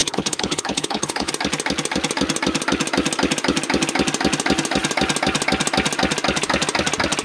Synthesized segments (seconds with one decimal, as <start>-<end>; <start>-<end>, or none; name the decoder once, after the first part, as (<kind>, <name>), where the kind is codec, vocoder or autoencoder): 0.0-1.3 (codec, HILCodec)